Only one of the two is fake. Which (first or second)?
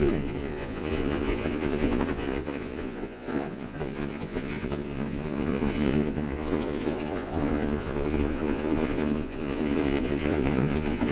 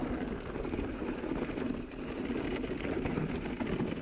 first